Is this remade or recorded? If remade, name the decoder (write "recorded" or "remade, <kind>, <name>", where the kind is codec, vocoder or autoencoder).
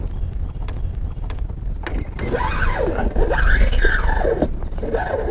recorded